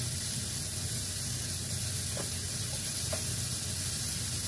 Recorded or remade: recorded